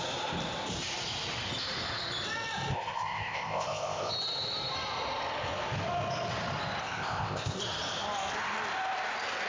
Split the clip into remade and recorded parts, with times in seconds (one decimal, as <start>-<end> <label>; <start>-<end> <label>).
0.0-2.7 recorded; 2.7-4.1 remade; 4.1-6.8 recorded; 6.8-7.6 remade; 7.6-9.5 recorded